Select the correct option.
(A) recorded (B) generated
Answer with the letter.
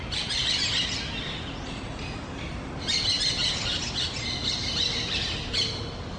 A